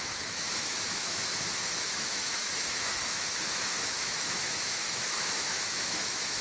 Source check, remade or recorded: remade